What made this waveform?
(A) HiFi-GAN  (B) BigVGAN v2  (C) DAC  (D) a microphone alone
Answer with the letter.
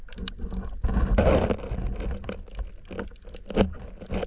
D